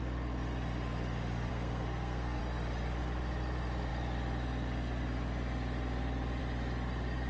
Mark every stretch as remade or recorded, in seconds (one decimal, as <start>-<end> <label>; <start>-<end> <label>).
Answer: 0.0-1.5 recorded; 1.5-2.4 remade; 2.4-7.3 recorded